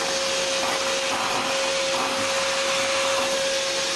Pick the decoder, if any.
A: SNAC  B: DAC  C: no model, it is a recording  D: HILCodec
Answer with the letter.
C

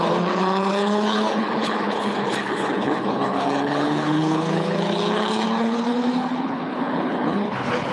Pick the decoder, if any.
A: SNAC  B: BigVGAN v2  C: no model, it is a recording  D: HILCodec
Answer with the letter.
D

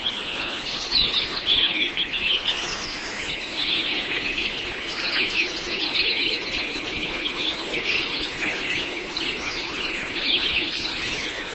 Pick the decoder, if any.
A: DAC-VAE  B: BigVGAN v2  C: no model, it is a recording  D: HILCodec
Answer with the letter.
D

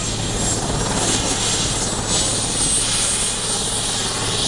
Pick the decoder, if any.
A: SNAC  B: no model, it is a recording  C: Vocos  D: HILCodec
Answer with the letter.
B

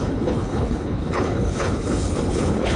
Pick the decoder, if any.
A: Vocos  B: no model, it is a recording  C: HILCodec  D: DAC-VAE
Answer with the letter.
C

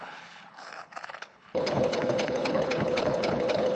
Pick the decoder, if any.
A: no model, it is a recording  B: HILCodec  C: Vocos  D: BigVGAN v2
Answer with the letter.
B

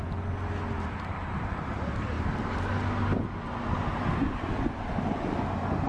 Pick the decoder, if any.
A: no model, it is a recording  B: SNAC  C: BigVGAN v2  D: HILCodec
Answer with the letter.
A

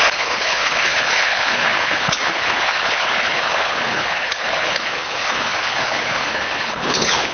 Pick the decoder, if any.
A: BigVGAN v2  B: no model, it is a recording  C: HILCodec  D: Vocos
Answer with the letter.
C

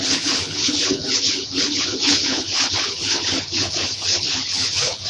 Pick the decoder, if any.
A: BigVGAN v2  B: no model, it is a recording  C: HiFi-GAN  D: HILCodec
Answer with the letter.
D